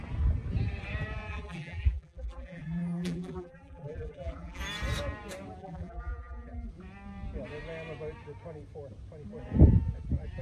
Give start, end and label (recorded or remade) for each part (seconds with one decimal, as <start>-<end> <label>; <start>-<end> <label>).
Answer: 0.0-1.3 recorded; 1.3-4.6 remade; 4.6-5.6 recorded; 5.6-6.7 remade; 6.7-10.4 recorded